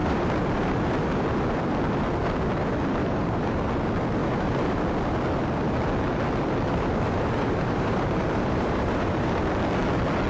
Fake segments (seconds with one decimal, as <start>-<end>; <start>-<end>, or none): 0.0-0.8; 3.0-3.6; 4.2-4.8; 6.7-9.4